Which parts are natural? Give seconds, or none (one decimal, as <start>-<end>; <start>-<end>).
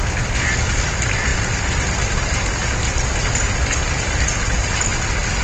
0.0-5.4